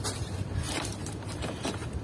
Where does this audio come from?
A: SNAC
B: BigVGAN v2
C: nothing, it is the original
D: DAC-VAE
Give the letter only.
B